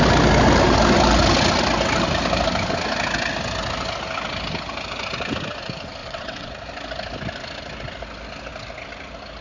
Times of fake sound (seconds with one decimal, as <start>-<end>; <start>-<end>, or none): 6.0-6.5